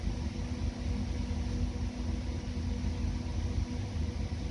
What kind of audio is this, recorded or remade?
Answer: recorded